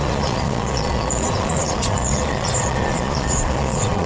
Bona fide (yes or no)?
no